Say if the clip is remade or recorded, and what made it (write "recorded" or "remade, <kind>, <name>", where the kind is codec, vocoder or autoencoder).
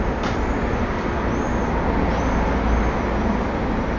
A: recorded